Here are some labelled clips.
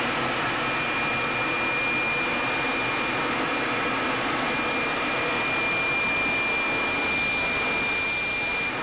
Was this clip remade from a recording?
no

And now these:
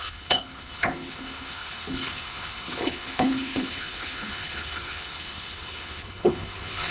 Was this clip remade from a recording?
yes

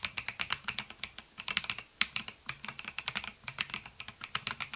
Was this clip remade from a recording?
no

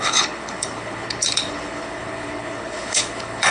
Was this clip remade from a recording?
yes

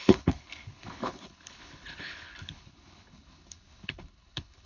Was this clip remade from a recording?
yes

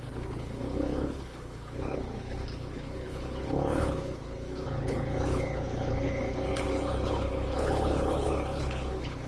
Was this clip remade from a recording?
yes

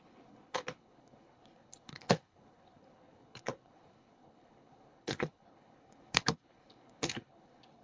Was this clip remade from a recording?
yes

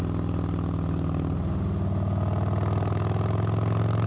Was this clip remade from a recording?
no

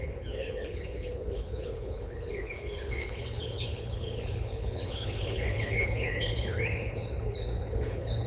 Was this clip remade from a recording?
yes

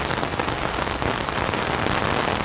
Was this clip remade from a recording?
no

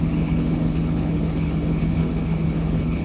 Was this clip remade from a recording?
yes